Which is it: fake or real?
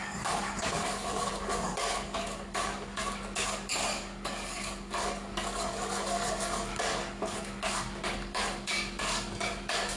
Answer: fake